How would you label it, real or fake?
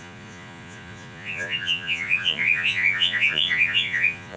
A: fake